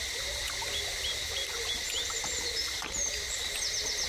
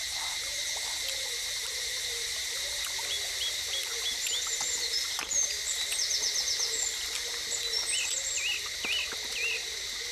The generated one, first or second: first